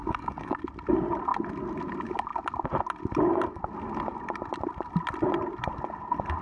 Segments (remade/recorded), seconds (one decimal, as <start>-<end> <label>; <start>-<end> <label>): 0.0-0.6 remade; 0.6-6.4 recorded